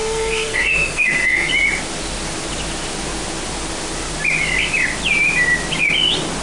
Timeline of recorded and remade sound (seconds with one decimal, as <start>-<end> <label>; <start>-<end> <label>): 0.0-1.5 remade; 1.5-6.4 recorded